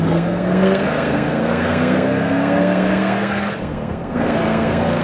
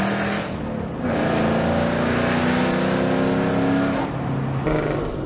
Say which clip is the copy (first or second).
first